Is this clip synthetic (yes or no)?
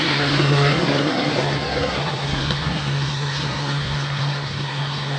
yes